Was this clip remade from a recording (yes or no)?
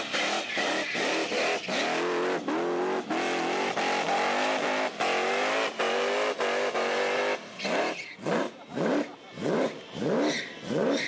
no